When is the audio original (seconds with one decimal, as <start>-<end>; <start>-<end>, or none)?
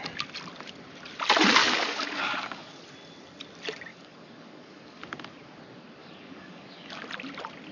0.0-1.6; 2.7-3.9; 5.0-6.0; 7.0-7.7